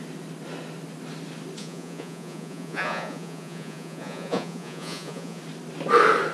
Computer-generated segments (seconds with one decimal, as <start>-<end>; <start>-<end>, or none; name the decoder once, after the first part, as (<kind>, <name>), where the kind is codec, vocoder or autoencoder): 1.6-5.4 (vocoder, Vocos)